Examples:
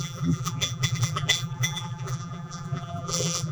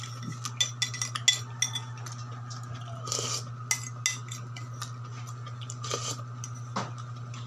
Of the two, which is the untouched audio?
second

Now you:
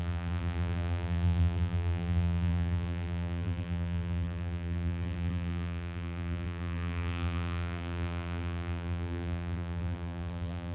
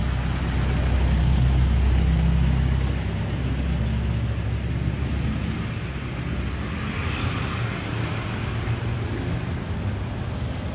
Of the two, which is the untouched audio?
second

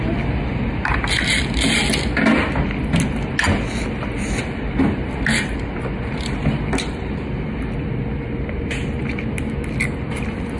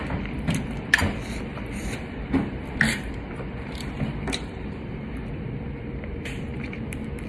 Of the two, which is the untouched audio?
first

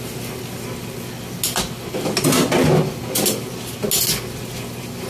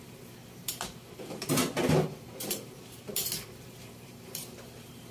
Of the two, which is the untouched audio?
first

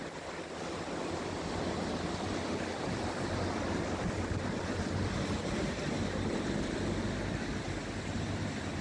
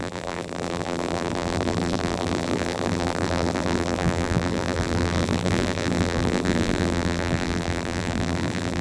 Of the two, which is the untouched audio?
first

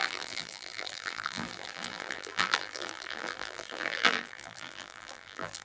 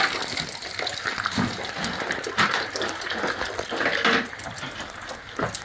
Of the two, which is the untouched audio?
second